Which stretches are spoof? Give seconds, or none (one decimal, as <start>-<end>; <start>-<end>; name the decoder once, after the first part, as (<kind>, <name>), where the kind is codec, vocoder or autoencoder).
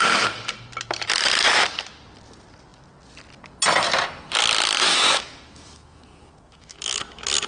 4.9-7.0 (autoencoder, DAC-VAE)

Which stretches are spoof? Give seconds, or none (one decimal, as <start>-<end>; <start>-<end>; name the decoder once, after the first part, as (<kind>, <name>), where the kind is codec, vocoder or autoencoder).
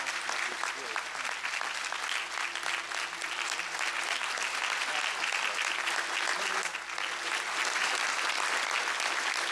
none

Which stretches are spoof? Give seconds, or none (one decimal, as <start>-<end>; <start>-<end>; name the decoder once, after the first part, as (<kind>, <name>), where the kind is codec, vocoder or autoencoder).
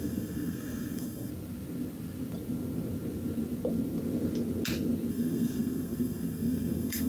0.0-1.3 (codec, SNAC); 5.1-7.1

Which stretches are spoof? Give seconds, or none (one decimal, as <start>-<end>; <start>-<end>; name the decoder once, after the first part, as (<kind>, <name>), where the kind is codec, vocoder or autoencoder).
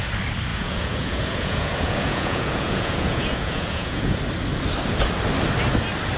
0.5-4.2 (vocoder, Vocos)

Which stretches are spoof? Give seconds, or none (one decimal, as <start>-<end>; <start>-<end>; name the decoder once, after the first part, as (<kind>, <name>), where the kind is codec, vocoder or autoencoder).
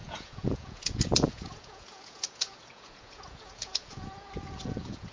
0.0-5.1 (vocoder, Vocos)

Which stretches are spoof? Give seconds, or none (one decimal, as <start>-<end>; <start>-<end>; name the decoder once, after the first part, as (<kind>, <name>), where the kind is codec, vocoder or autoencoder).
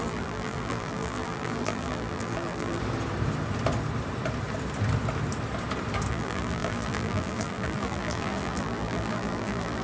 0.0-2.8 (vocoder, BigVGAN v2); 6.1-9.8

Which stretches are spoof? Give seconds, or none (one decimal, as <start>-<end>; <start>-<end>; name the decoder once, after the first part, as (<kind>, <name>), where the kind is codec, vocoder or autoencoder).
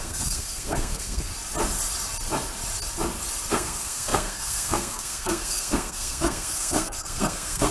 0.0-1.3 (codec, SNAC); 3.5-7.7